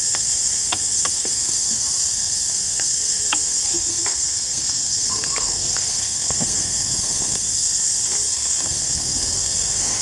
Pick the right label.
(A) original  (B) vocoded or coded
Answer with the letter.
B